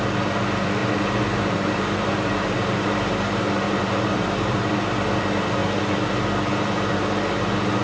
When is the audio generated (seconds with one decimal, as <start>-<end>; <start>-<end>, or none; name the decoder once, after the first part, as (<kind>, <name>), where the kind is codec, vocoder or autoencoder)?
0.8-4.8 (vocoder, BigVGAN v2)